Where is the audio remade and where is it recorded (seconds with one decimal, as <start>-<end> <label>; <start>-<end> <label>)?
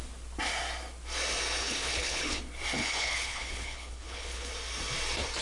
0.0-1.6 recorded; 1.6-2.4 remade; 2.4-2.8 recorded; 2.8-4.5 remade; 4.5-5.4 recorded